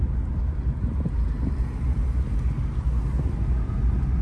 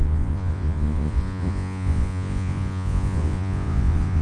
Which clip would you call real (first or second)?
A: first